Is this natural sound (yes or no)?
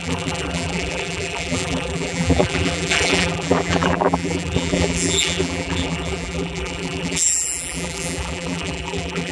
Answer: no